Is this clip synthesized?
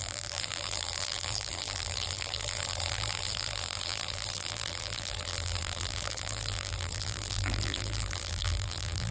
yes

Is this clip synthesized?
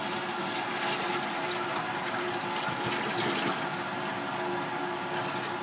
no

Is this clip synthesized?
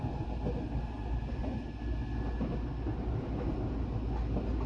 no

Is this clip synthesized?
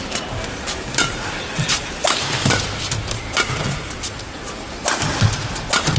no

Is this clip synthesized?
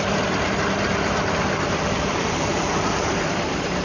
yes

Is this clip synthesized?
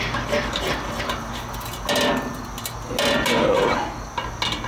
no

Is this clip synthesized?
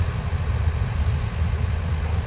yes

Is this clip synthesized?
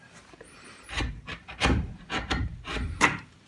yes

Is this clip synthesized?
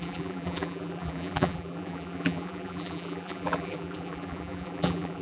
yes